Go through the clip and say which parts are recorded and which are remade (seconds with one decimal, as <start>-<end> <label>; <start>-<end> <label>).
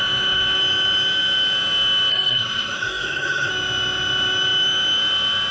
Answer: 0.0-2.1 recorded; 2.1-3.5 remade; 3.5-5.5 recorded